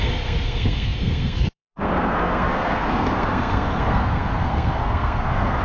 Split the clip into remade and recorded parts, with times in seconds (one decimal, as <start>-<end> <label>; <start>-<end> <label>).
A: 0.0-5.6 remade